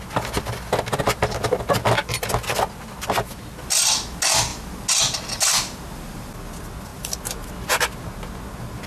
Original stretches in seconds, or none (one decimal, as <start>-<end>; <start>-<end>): 0.0-8.9